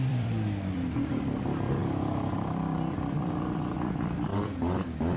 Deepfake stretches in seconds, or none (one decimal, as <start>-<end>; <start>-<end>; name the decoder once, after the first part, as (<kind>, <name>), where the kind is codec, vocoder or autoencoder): 0.0-4.3 (vocoder, BigVGAN v2)